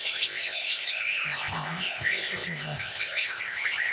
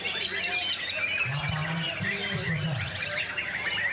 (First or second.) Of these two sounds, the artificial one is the first